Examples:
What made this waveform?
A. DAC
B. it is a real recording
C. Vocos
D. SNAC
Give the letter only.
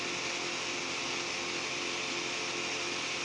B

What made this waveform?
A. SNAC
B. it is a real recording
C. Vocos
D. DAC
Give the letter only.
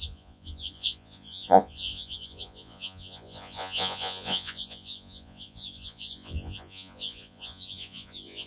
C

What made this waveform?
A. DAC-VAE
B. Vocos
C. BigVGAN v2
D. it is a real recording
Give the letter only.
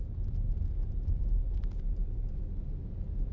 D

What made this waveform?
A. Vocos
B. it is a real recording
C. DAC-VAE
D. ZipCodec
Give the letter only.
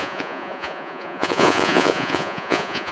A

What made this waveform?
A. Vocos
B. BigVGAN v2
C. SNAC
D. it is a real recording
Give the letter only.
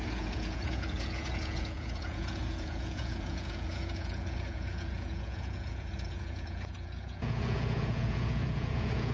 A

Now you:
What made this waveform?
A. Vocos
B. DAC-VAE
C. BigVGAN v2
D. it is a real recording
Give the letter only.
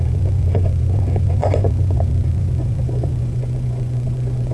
A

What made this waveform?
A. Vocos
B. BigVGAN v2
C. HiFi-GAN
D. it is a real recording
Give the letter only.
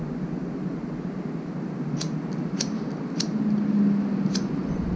D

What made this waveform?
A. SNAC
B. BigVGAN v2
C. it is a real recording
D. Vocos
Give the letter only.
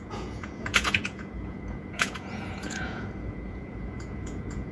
D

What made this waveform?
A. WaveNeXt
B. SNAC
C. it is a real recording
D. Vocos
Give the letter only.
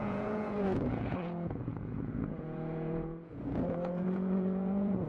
D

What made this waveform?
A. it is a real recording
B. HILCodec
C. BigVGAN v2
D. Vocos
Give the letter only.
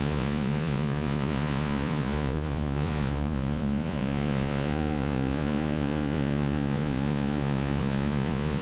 D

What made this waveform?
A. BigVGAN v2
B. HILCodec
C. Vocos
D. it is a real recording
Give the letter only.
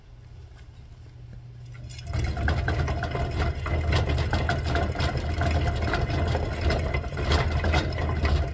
D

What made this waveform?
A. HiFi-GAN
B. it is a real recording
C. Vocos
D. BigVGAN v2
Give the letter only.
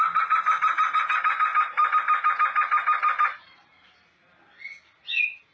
B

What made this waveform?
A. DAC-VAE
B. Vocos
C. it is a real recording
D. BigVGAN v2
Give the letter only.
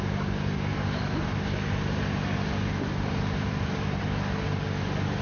C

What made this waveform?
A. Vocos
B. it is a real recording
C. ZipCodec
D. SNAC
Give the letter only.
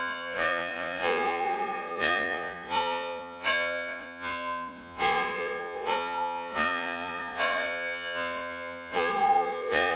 A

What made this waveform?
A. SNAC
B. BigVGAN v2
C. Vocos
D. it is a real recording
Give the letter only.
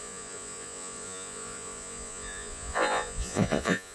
C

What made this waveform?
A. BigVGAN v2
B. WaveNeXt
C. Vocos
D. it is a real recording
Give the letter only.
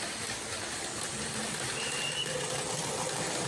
D